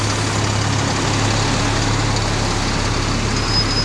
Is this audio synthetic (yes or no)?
no